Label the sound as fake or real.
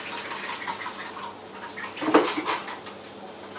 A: real